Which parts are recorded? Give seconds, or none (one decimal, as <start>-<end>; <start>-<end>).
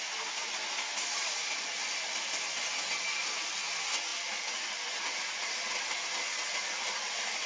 0.0-7.5